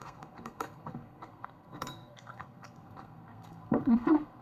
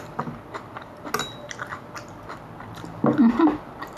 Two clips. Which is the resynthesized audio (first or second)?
first